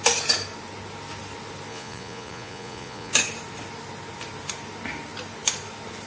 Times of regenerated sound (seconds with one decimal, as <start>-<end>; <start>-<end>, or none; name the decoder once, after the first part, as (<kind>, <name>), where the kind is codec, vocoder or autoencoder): 1.7-3.1 (vocoder, Vocos)